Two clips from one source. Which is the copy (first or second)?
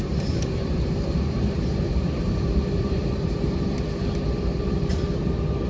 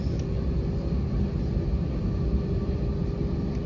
first